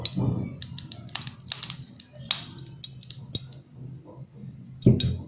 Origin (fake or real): real